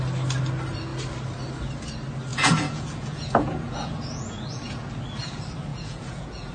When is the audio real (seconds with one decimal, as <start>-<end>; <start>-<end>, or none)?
0.0-2.3; 4.9-5.7